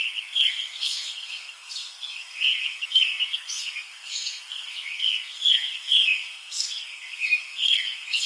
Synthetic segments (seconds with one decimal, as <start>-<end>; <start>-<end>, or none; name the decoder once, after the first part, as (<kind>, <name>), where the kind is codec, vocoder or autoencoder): 0.0-8.3 (codec, SNAC)